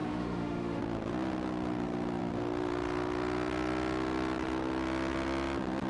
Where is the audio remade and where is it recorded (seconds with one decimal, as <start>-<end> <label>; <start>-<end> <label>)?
0.0-0.8 remade; 0.8-5.9 recorded